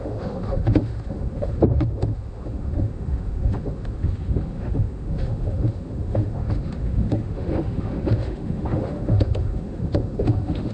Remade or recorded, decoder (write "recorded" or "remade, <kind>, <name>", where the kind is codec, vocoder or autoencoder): remade, autoencoder, DAC-VAE